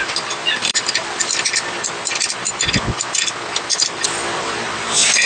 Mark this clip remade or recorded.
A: remade